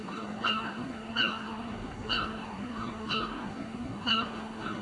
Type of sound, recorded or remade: remade